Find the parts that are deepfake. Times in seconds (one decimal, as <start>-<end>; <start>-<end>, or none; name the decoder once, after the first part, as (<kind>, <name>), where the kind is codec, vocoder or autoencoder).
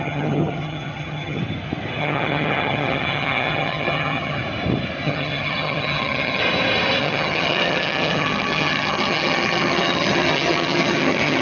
0.0-1.4 (vocoder, HiFi-GAN); 2.0-4.4; 5.0-6.4; 7.0-11.4